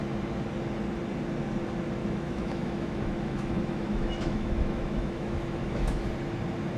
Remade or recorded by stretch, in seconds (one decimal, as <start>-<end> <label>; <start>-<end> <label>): 0.0-2.0 recorded; 2.0-6.1 remade; 6.1-6.8 recorded